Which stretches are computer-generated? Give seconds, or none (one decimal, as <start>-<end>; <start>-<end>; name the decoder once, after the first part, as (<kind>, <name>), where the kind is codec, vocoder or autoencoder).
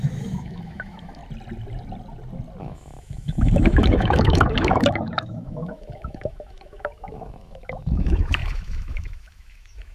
0.0-1.2 (autoencoder, DAC-VAE); 2.6-9.9